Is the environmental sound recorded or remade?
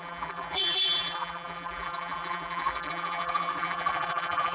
remade